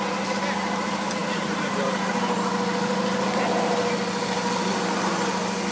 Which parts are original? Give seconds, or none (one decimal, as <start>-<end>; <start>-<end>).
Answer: 0.0-5.7